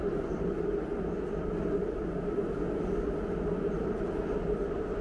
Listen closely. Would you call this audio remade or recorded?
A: recorded